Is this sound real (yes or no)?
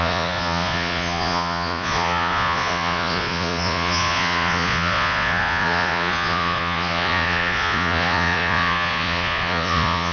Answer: no